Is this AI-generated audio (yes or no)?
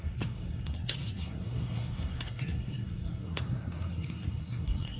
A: yes